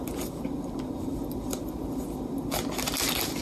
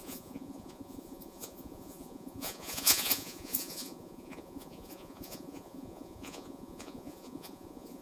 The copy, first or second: second